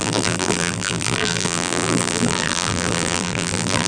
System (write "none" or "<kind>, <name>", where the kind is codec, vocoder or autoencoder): vocoder, BigVGAN v2